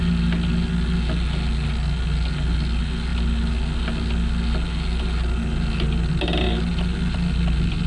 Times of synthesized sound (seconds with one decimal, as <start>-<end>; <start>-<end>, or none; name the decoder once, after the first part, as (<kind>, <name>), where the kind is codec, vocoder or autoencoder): none